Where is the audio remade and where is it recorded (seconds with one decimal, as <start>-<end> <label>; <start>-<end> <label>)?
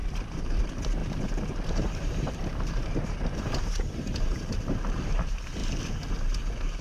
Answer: 0.0-0.6 remade; 0.6-1.0 recorded; 1.0-5.1 remade; 5.1-6.8 recorded